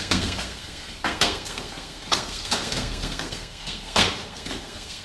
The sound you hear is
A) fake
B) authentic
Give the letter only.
A